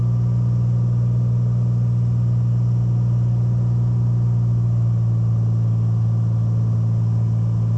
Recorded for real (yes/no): yes